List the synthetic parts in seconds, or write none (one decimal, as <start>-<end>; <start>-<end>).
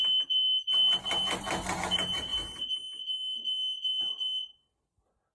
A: none